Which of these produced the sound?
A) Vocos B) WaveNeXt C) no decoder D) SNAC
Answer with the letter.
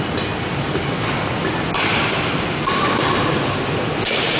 C